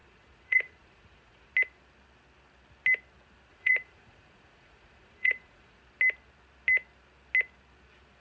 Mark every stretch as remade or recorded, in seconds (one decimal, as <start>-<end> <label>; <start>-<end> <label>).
0.0-1.5 remade; 1.5-3.5 recorded; 3.5-5.8 remade; 5.8-8.2 recorded